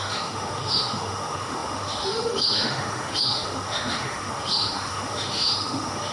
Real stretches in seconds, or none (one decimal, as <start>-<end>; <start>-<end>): none